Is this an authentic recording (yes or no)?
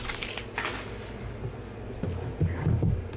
yes